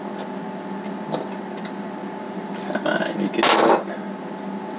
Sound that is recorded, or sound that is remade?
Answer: recorded